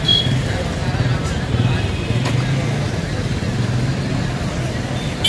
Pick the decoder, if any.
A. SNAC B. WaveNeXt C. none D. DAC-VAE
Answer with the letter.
C